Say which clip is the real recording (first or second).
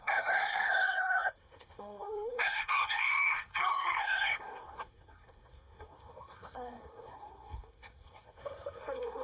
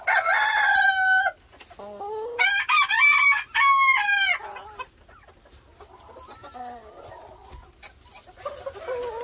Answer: second